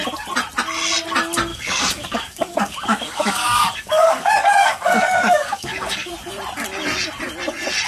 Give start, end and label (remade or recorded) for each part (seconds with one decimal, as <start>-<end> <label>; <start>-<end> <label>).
0.0-1.5 recorded; 1.5-6.1 remade; 6.1-7.9 recorded